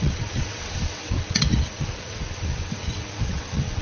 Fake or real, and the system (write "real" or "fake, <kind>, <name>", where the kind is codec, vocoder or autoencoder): fake, vocoder, WaveNeXt